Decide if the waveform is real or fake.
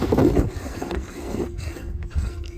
fake